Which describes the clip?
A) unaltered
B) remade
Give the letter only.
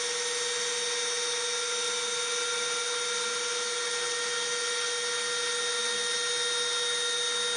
A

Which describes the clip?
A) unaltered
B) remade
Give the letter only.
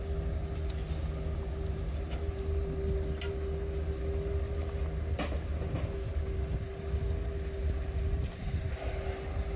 A